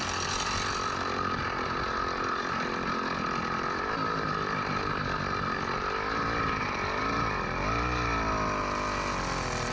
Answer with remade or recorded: recorded